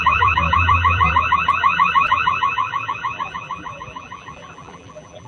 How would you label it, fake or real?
fake